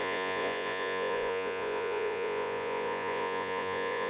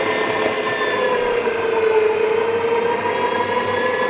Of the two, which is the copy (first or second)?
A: first